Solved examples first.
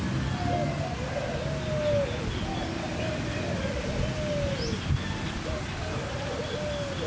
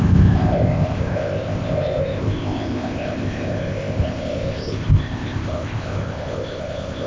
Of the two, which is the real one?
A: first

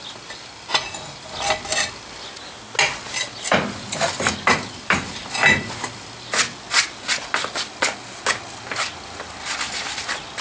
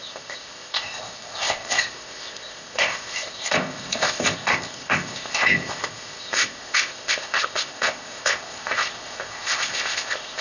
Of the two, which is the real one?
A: first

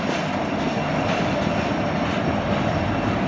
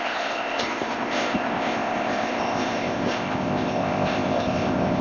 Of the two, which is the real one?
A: first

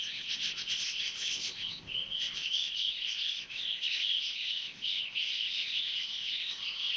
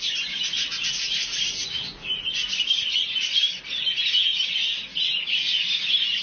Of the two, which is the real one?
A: second